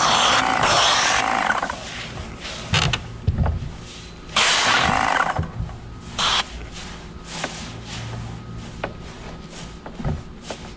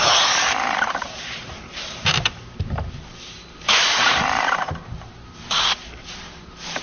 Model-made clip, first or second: second